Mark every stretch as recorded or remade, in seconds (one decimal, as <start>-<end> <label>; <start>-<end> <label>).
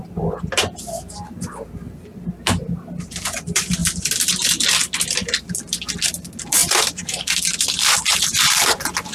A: 0.0-9.1 remade